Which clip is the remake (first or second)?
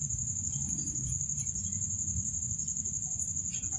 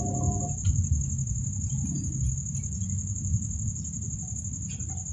first